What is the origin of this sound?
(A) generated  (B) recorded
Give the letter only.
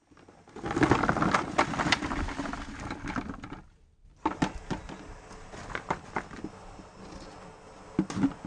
B